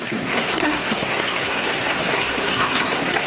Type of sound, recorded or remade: remade